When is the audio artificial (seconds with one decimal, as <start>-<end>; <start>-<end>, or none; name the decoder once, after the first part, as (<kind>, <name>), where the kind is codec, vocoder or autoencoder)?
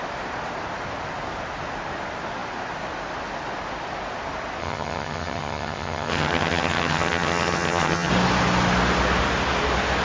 4.6-8.1 (vocoder, HiFi-GAN)